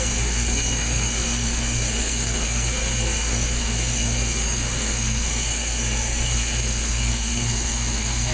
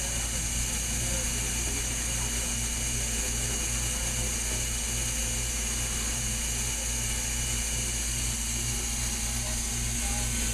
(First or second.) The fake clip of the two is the first